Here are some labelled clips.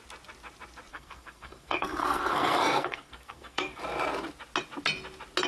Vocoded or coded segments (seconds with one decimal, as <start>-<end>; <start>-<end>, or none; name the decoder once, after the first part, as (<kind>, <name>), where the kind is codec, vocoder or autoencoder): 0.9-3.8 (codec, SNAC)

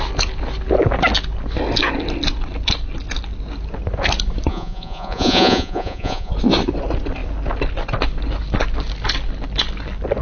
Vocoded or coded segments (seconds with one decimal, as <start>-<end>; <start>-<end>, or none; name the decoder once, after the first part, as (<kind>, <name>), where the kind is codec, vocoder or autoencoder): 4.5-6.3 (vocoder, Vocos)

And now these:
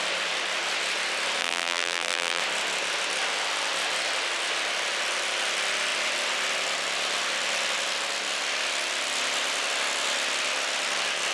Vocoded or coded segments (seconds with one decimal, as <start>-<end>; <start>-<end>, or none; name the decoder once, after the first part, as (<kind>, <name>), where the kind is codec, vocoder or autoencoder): 1.4-2.4 (vocoder, BigVGAN v2)